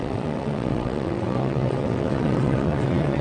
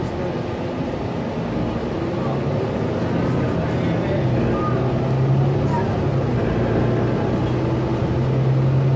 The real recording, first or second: second